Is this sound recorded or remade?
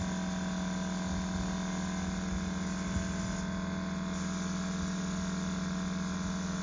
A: recorded